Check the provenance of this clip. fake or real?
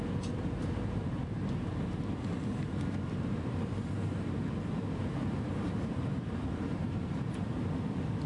fake